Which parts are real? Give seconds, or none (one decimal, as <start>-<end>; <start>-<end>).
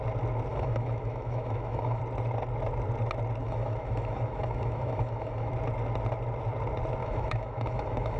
0.0-0.5; 2.0-3.4; 5.5-7.0